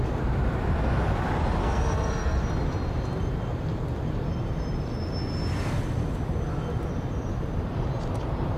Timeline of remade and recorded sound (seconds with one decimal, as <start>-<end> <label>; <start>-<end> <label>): 0.0-1.6 recorded; 1.6-2.4 remade; 2.4-8.6 recorded